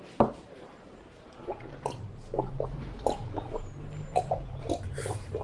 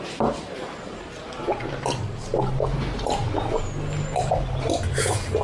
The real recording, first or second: second